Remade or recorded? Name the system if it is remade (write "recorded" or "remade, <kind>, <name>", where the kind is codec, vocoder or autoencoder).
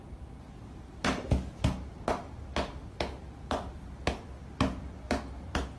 recorded